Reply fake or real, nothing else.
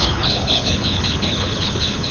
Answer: fake